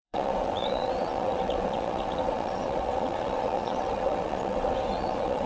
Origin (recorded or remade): remade